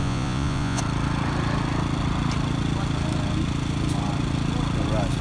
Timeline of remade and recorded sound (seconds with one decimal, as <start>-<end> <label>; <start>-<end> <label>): 0.0-0.8 remade; 0.8-5.2 recorded